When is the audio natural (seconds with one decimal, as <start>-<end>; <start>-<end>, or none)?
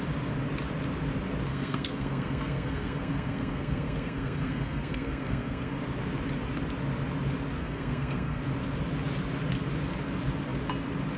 0.0-1.5; 5.8-7.6; 8.4-11.2